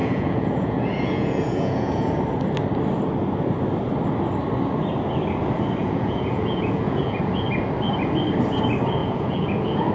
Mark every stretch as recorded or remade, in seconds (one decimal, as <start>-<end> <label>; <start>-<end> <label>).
0.0-2.2 remade; 2.2-5.8 recorded; 5.8-7.2 remade; 7.2-9.0 recorded; 9.0-9.9 remade